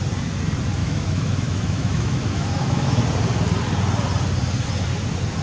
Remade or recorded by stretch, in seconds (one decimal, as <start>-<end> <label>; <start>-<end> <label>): 0.0-0.8 recorded; 0.8-3.0 remade; 3.0-5.4 recorded